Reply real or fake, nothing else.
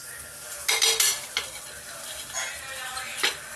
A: real